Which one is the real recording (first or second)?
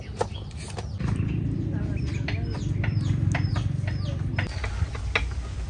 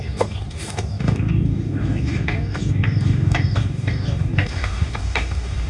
first